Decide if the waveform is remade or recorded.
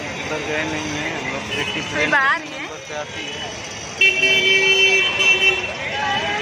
recorded